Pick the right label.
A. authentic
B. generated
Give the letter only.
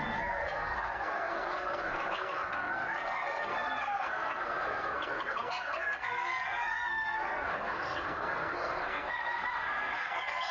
B